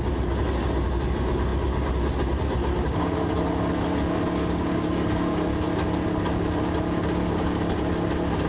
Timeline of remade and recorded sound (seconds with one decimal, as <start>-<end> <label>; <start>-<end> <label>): 0.0-2.7 recorded; 2.7-3.4 remade; 3.4-4.4 recorded; 4.4-5.2 remade; 5.2-8.5 recorded